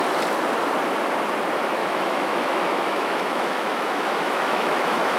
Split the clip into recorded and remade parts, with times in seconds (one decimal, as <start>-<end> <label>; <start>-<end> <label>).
0.0-1.8 recorded; 1.8-5.2 remade